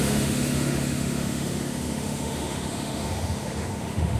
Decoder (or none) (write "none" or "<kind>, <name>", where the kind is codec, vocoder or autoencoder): autoencoder, DAC-VAE